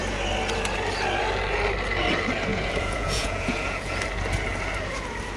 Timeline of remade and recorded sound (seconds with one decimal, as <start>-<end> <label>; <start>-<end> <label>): 0.0-2.5 recorded; 2.5-4.0 remade; 4.0-5.4 recorded